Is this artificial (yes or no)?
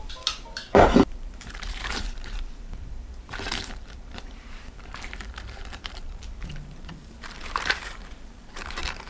yes